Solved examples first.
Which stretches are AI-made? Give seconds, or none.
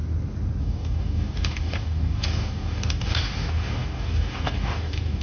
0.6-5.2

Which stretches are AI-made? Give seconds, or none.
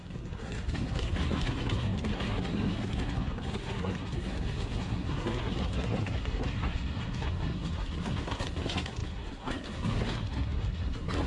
0.0-11.3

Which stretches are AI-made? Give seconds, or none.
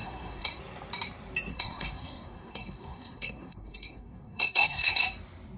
0.0-0.6; 1.5-4.9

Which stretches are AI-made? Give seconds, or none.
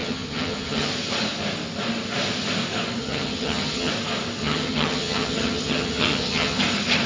0.0-0.9; 3.0-3.9; 4.4-6.6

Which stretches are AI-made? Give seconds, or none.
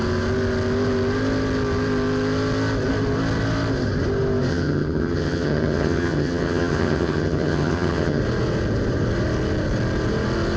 4.5-8.2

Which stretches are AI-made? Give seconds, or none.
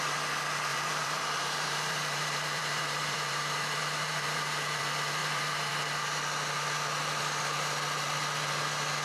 0.7-4.8; 5.2-5.7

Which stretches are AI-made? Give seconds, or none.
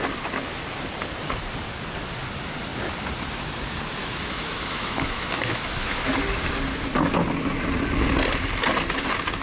4.0-6.2